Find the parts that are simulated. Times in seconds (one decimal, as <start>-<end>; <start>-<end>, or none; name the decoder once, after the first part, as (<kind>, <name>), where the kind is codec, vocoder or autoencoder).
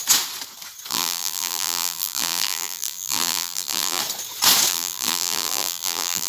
0.9-4.0 (vocoder, BigVGAN v2); 4.7-6.3